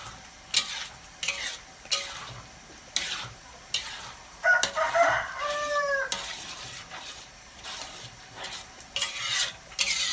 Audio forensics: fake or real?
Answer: real